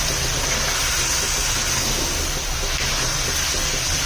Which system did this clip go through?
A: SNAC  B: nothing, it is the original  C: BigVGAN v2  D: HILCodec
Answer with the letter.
B